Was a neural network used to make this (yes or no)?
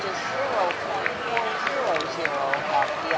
no